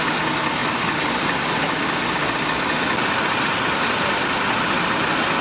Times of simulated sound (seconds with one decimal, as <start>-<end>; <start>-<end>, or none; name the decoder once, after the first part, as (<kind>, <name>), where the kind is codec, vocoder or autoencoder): none